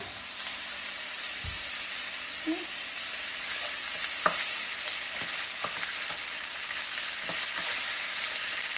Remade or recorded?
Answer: recorded